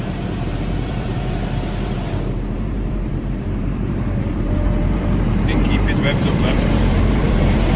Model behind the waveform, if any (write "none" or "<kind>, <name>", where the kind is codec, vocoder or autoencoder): vocoder, BigVGAN v2